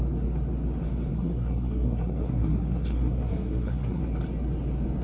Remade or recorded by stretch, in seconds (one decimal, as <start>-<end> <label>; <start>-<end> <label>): 0.0-1.1 recorded; 1.1-4.0 remade; 4.0-5.0 recorded